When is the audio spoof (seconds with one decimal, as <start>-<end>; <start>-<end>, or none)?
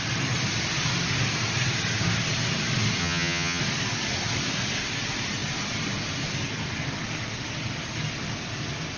3.0-3.6